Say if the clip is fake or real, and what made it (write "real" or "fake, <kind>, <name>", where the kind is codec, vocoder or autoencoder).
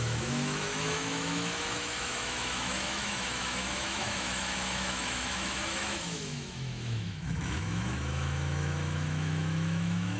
fake, autoencoder, DAC-VAE